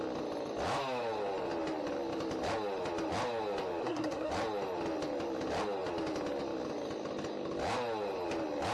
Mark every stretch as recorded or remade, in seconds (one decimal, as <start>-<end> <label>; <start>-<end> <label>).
0.0-3.8 recorded; 3.8-4.3 remade; 4.3-8.7 recorded